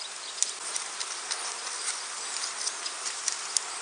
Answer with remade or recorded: recorded